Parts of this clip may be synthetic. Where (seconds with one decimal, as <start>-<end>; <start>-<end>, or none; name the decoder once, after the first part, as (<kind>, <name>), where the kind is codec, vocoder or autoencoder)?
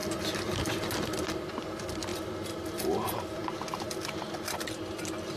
none